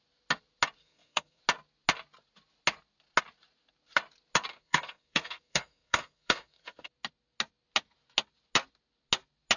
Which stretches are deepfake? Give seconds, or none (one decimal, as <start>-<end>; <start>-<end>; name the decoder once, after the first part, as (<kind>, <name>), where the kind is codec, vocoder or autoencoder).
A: 0.8-1.4 (codec, SNAC); 4.5-6.9

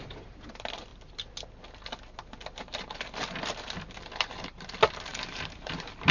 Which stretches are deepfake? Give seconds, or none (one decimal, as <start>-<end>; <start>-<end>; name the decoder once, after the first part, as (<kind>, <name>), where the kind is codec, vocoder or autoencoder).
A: 5.1-6.1 (vocoder, BigVGAN v2)

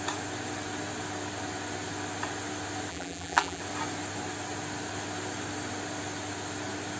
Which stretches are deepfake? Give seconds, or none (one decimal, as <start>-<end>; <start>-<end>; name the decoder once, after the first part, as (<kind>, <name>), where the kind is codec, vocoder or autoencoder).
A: 2.9-3.6 (vocoder, BigVGAN v2)

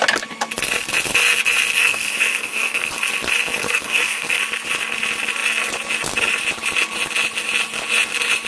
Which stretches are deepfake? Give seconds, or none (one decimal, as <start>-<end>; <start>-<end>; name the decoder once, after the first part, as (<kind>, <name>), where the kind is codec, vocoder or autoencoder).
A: 1.8-2.9 (codec, SNAC); 3.6-4.4

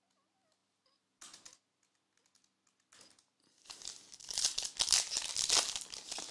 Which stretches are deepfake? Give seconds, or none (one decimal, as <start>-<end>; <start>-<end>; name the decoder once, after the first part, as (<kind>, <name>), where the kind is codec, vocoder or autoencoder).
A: none

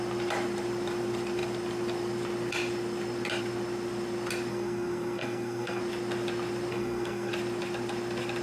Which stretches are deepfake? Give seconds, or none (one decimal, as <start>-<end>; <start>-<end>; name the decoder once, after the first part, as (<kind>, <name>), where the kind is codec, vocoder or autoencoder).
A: 4.5-5.8 (codec, SNAC); 6.7-7.3